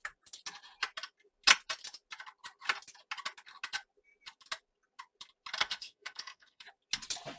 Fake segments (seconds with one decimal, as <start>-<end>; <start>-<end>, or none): 5.6-6.6